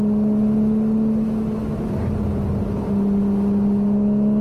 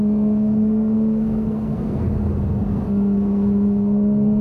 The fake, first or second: second